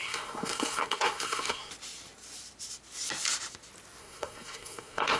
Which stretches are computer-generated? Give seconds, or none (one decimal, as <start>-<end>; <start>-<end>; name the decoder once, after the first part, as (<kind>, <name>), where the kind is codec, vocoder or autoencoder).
0.0-1.7 (codec, SNAC); 4.0-5.2